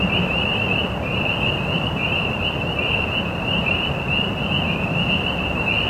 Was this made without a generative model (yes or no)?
no